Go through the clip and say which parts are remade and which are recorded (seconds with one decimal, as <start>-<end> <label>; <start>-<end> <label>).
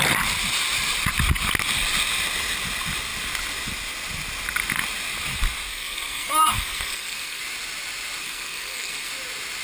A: 0.0-5.7 recorded; 5.7-7.4 remade; 7.4-8.2 recorded; 8.2-9.1 remade; 9.1-9.6 recorded